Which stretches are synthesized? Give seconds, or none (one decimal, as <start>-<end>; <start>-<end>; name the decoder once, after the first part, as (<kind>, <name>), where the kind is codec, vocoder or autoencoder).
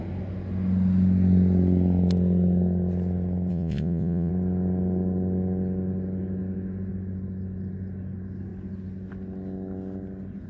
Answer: 3.5-4.3 (vocoder, Vocos)